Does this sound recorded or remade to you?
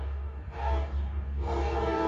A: remade